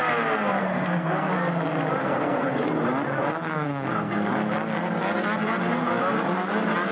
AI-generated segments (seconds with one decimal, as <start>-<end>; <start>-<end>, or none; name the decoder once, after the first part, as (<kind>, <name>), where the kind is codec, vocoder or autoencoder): 0.6-1.3 (codec, SNAC); 2.0-2.6; 3.2-4.3